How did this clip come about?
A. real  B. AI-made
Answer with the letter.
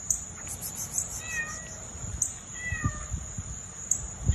A